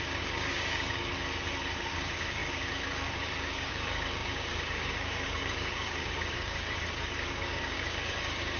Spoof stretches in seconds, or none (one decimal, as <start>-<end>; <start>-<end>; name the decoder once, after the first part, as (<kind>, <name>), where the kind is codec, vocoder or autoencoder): 0.0-1.1 (codec, DAC); 1.8-8.6